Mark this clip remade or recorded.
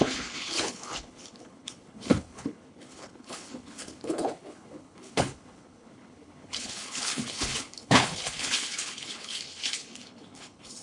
remade